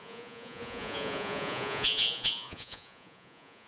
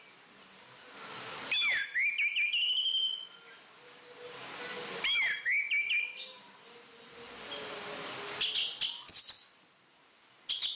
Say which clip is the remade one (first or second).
first